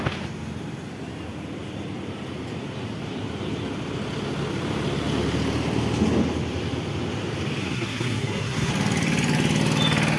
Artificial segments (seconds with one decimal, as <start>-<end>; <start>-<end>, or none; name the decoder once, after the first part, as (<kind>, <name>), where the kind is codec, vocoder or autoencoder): 7.6-8.7 (codec, SNAC)